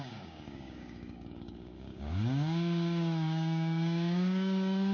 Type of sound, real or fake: fake